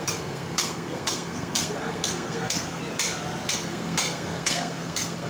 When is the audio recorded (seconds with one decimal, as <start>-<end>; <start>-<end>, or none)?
2.8-3.5